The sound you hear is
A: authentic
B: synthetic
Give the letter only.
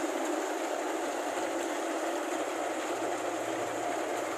A